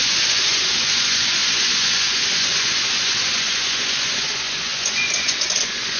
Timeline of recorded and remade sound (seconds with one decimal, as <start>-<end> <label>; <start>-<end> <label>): 0.0-6.0 remade